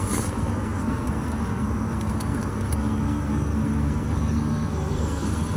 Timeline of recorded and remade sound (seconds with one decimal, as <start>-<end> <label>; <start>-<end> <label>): 0.0-5.6 remade